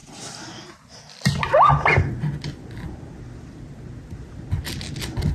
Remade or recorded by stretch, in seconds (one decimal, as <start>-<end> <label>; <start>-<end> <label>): 0.0-5.3 recorded